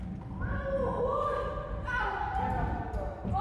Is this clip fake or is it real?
real